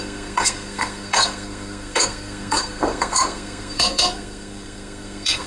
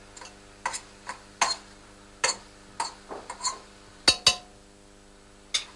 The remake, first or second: first